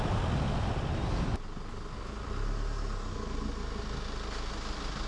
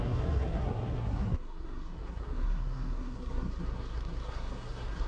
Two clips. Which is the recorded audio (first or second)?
first